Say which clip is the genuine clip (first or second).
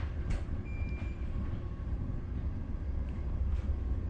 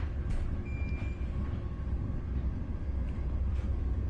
second